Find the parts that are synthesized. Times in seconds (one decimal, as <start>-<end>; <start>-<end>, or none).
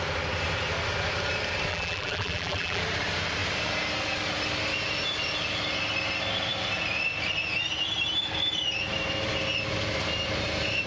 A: 1.7-2.8